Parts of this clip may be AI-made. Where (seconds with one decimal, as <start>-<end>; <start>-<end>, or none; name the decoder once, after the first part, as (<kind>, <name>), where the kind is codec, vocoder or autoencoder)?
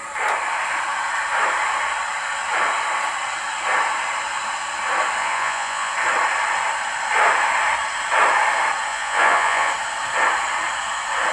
5.2-5.9 (vocoder, Vocos); 8.9-9.7